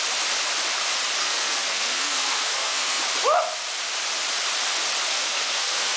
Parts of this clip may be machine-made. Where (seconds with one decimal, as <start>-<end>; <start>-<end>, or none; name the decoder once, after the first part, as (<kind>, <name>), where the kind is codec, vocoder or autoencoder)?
1.2-3.0 (codec, SNAC); 5.1-6.0